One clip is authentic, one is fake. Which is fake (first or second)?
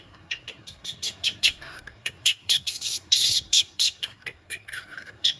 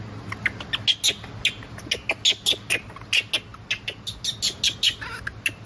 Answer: first